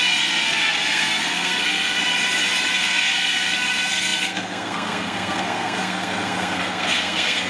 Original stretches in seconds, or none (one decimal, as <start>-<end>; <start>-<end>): 2.1-2.7